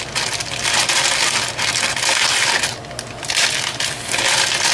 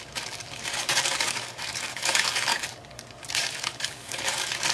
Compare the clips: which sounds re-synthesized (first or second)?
second